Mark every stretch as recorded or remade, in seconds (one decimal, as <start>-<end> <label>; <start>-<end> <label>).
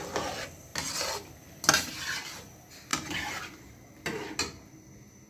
0.0-2.9 recorded; 2.9-4.3 remade; 4.3-5.3 recorded